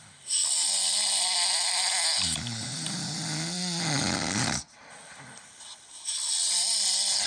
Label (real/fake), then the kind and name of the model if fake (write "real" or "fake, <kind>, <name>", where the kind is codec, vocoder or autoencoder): real